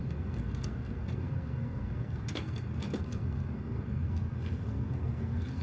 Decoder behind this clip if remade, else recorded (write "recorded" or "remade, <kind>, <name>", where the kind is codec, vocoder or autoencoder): remade, codec, SNAC